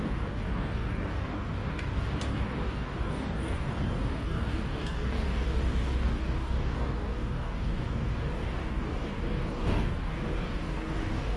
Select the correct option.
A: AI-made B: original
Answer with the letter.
A